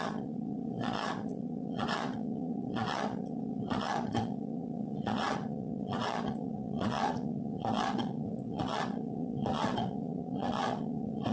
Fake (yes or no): yes